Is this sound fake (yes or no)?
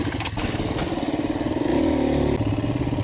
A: no